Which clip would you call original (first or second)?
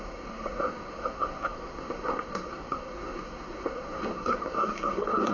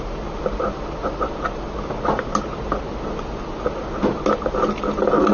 second